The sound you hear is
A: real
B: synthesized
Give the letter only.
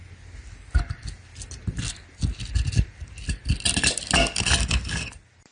A